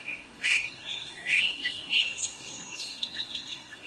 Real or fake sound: fake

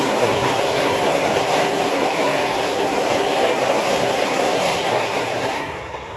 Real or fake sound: fake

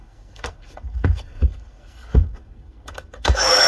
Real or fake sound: fake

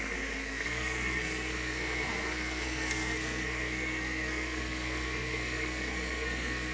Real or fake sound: fake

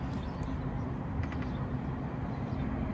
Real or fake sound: real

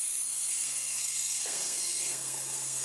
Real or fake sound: fake